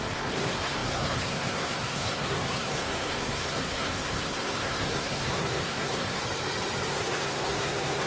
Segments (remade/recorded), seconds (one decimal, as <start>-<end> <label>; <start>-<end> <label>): 0.0-6.2 remade; 6.2-6.9 recorded; 6.9-8.1 remade